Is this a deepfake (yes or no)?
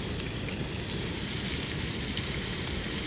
no